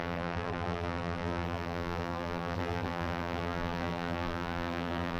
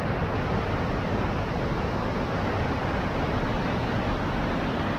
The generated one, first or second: first